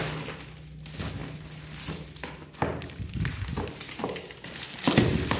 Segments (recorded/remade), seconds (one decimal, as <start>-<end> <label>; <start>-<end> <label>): 0.0-5.4 recorded